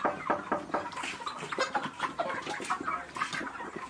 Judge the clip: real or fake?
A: real